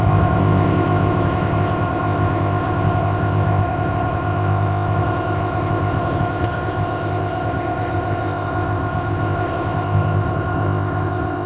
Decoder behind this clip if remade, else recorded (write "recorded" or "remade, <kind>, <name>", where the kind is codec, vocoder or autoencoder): remade, codec, ZipCodec